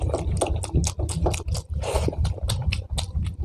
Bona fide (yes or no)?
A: yes